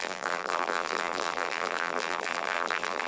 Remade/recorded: remade